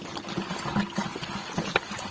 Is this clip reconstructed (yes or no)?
no